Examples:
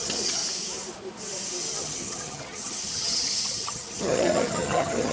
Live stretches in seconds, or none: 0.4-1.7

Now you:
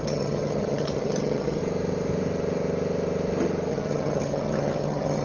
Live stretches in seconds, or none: 1.6-3.7

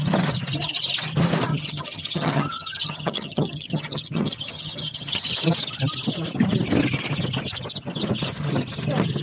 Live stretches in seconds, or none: 0.0-1.5; 5.3-9.2

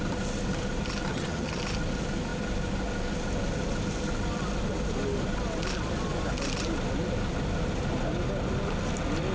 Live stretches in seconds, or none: 0.0-1.1; 1.6-9.3

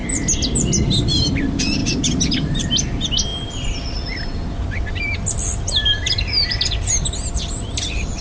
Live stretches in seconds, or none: 0.0-8.2